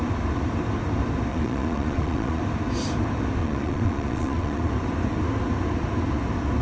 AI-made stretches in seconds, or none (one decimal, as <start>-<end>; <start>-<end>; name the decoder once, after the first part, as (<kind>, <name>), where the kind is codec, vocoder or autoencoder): 1.3-2.4 (vocoder, Vocos); 3.4-4.7